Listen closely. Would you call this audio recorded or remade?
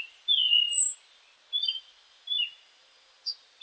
recorded